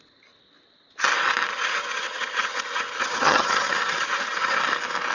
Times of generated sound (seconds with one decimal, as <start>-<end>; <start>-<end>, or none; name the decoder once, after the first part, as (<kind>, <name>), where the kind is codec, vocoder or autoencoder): 1.5-4.6 (vocoder, HiFi-GAN)